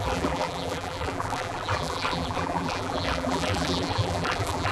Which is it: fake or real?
fake